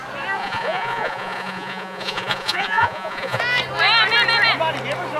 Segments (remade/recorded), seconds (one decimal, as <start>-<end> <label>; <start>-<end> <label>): 0.0-0.4 recorded; 0.4-3.4 remade; 3.4-5.2 recorded